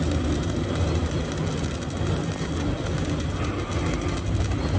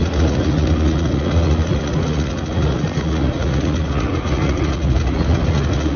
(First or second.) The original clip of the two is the first